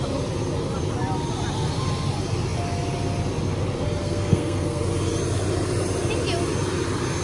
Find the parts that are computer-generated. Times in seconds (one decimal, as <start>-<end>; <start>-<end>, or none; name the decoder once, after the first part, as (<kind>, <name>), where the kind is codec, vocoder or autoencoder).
4.0-4.8 (codec, SNAC)